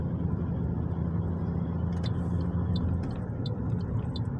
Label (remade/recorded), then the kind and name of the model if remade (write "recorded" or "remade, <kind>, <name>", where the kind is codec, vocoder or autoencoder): recorded